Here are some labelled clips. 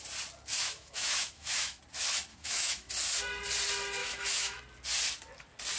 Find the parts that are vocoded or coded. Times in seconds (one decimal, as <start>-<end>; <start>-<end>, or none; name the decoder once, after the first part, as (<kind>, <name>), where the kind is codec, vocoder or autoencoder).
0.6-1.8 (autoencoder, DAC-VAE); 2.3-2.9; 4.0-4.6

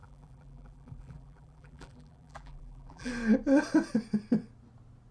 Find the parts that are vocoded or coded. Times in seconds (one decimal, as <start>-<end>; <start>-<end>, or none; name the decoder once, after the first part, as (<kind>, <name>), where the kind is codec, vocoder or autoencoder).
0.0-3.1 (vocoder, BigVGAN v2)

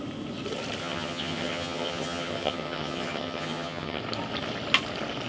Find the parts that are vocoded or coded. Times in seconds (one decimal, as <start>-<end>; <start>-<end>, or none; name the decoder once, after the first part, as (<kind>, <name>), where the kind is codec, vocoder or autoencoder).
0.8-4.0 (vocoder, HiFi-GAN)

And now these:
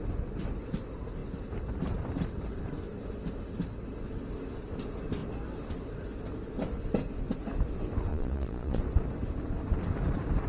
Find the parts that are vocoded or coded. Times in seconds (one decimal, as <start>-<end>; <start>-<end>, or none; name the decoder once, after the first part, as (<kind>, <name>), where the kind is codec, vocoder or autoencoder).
8.1-8.8 (vocoder, Vocos)